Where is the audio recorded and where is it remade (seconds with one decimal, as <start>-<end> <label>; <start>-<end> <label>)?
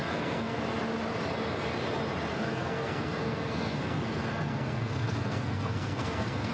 0.0-0.6 remade; 0.6-2.3 recorded; 2.3-6.5 remade